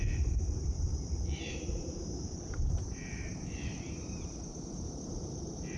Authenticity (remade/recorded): remade